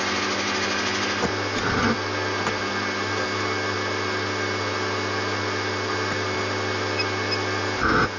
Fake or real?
real